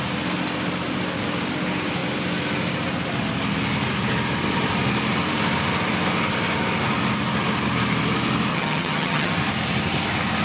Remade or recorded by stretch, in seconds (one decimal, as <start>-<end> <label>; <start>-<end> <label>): 0.0-8.5 recorded; 8.5-9.3 remade; 9.3-10.4 recorded